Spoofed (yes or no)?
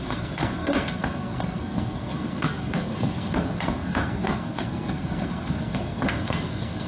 yes